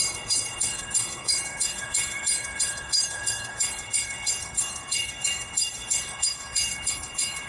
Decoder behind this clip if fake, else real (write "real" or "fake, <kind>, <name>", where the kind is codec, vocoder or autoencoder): fake, codec, HILCodec